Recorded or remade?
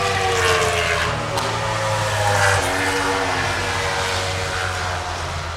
recorded